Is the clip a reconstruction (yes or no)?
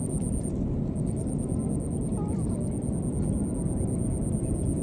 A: no